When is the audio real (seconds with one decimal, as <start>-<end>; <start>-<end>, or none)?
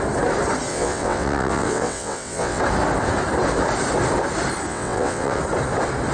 0.0-0.7; 2.6-4.7; 5.4-6.1